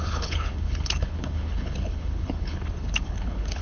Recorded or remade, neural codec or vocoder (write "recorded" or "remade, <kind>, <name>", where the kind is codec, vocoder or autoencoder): remade, codec, HILCodec